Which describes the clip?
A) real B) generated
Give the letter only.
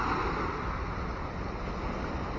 A